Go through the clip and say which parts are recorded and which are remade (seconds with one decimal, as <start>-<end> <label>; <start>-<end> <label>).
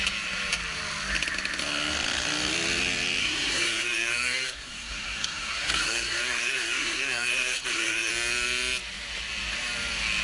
0.0-3.2 recorded; 3.2-8.1 remade; 8.1-10.2 recorded